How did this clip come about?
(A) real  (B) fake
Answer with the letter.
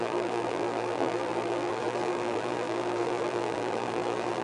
B